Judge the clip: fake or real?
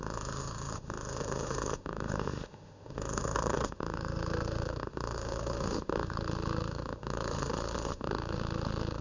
fake